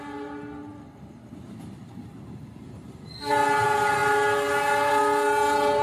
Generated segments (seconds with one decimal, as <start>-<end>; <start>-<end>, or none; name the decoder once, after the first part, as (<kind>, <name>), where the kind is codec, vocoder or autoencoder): none